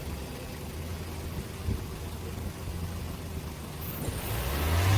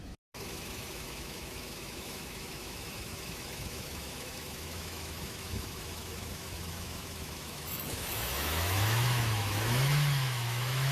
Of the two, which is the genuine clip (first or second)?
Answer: first